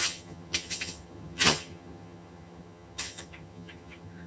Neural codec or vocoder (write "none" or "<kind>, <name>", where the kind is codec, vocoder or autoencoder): vocoder, HiFi-GAN